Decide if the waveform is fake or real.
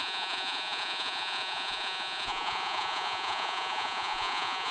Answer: fake